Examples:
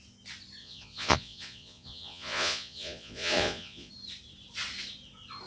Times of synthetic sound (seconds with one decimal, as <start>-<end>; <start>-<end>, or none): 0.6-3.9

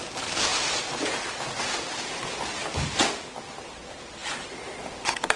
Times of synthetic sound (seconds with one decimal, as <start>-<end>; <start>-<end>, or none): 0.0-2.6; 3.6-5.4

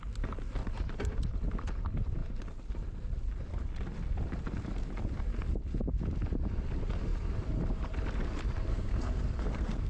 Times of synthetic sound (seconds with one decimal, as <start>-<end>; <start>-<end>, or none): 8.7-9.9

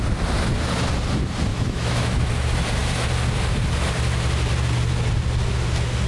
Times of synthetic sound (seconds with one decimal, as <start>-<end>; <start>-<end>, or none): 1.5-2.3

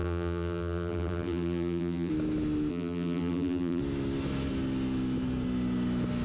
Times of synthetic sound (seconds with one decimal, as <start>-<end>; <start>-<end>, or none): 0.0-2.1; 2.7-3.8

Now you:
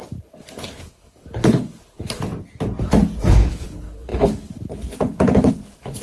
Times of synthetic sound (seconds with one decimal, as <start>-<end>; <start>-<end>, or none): 0.0-2.3; 3.3-6.0

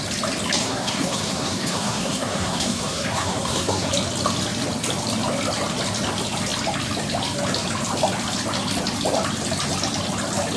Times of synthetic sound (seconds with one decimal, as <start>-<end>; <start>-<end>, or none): 0.6-3.9

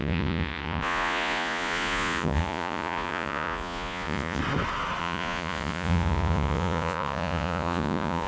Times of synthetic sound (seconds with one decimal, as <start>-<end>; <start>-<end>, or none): 0.0-4.4; 5.0-8.3